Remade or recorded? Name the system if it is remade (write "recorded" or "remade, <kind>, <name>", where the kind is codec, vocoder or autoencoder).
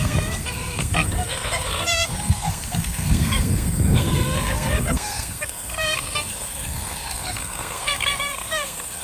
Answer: remade, codec, SNAC